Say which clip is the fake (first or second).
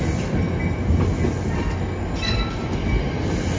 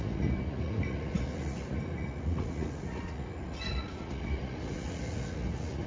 second